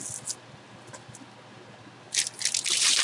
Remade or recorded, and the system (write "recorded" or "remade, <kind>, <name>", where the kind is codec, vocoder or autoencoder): recorded